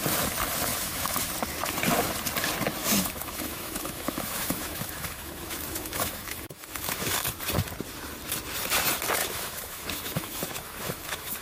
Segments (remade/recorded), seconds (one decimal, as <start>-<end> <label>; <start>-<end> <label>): 0.0-0.7 recorded; 0.7-1.3 remade; 1.3-2.8 recorded; 2.8-7.4 remade; 7.4-9.2 recorded; 9.2-11.4 remade